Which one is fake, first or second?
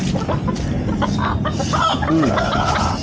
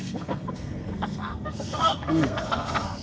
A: second